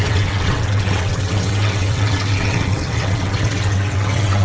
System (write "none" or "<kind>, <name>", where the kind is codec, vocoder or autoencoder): vocoder, WaveNeXt